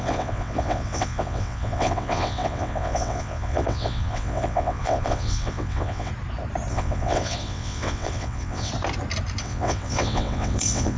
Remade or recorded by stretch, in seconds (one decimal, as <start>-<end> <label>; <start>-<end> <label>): 0.0-6.1 remade; 6.1-6.7 recorded; 6.7-8.7 remade; 8.7-9.4 recorded; 9.4-11.0 remade